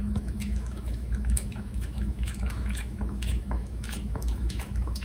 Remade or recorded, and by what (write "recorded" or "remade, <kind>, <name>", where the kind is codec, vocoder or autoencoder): remade, autoencoder, DAC-VAE